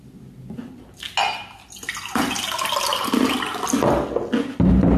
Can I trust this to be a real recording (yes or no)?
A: yes